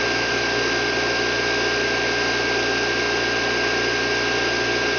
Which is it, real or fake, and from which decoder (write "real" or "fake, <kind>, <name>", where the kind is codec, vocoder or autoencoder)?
real